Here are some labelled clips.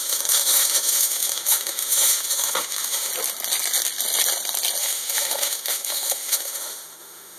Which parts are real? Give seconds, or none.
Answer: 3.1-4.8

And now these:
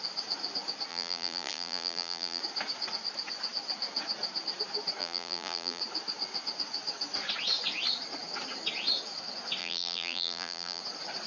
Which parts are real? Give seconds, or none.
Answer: 0.0-0.9; 2.4-5.0; 5.8-9.6; 10.8-11.3